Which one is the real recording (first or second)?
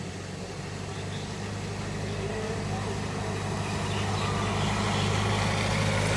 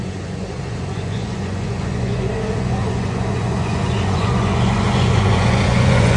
first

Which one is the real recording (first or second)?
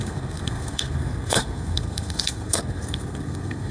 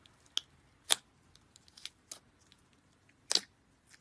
second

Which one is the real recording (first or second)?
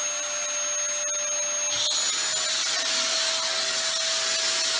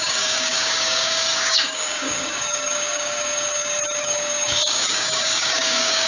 first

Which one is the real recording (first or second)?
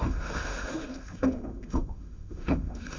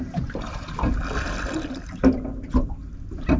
second